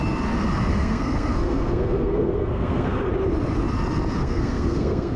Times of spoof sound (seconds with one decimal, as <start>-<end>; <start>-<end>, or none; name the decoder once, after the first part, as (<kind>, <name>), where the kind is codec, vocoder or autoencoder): 0.7-3.1 (codec, SNAC); 4.2-5.2

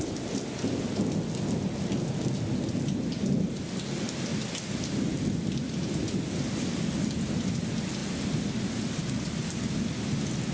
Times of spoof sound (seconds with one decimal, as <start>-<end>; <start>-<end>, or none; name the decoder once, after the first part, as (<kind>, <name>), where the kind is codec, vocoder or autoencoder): none

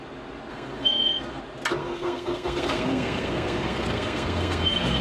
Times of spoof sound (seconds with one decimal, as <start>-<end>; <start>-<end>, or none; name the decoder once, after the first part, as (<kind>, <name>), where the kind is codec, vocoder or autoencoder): 0.5-1.4 (codec, SNAC); 1.8-5.0

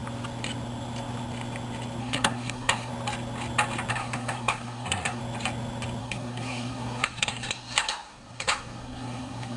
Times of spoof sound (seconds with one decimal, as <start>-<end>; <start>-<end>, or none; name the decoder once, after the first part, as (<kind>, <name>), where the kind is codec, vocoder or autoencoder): 2.0-2.9 (codec, SNAC); 3.9-5.2; 6.0-9.6

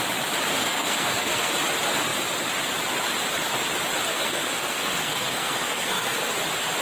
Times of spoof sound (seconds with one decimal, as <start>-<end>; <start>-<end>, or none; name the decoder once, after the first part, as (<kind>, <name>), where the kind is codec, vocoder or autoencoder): 0.6-1.5 (codec, SNAC); 4.1-6.2

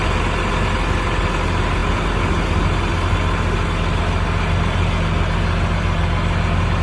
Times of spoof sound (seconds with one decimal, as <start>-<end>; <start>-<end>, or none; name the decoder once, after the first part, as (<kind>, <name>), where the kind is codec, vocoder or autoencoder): none

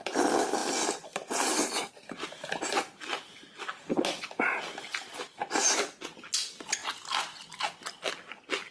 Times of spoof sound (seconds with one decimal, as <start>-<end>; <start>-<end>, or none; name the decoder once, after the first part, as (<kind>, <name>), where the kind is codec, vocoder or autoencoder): none